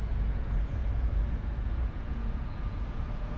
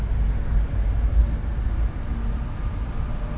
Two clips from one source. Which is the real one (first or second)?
second